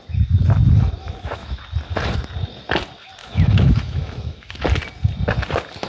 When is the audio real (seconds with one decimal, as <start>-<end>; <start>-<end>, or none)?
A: 0.0-1.0; 1.6-3.2; 4.6-5.9